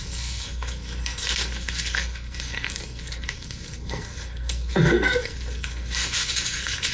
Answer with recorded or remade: remade